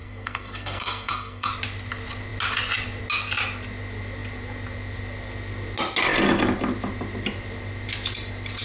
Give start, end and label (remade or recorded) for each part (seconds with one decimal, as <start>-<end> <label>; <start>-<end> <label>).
0.0-1.5 remade; 1.5-8.6 recorded